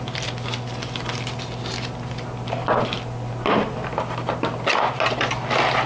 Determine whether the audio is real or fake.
real